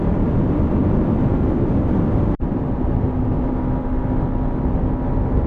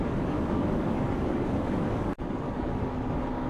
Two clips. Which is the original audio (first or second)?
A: first